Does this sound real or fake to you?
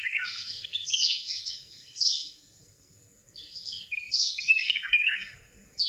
fake